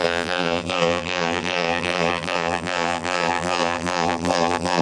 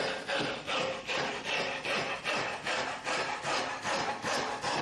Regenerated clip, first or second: first